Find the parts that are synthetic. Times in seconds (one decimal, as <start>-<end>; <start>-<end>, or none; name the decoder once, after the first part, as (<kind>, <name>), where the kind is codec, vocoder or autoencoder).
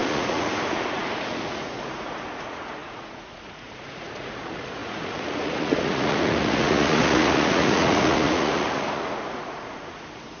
0.0-10.4 (vocoder, Vocos)